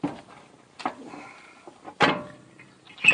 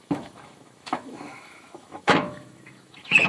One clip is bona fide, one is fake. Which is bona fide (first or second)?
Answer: first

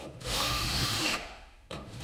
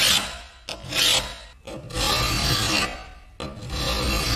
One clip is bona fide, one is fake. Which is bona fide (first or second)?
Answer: second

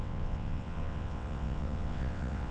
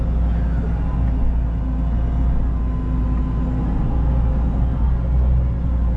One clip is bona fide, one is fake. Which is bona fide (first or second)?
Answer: second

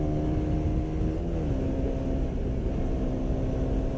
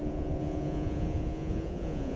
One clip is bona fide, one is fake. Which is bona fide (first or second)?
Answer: first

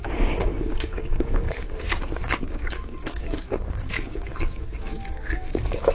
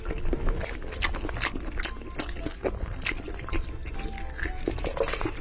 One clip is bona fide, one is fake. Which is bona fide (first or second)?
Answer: second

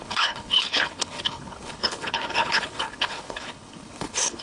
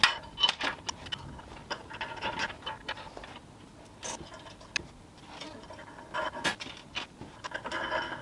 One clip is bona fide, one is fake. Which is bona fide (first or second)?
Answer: second